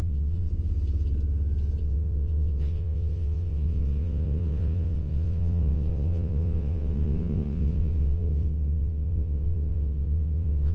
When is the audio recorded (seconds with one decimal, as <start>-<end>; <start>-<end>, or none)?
0.5-1.8